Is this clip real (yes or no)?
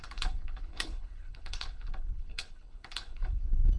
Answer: no